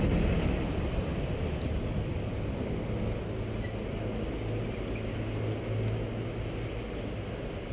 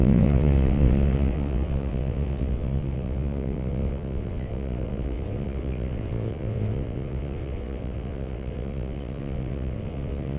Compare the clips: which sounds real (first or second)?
first